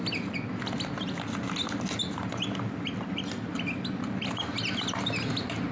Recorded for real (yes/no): yes